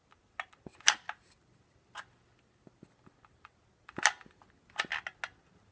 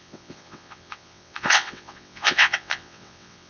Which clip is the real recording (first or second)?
first